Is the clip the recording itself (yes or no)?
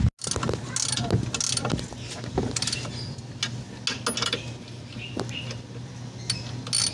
yes